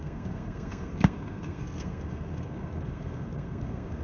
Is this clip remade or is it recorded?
remade